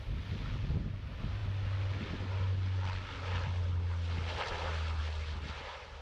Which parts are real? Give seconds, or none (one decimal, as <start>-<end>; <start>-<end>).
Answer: 0.0-6.0